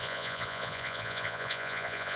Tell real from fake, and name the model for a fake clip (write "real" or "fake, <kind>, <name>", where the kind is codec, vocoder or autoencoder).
fake, vocoder, Vocos